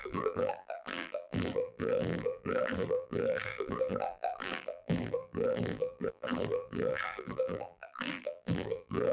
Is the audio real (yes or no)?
no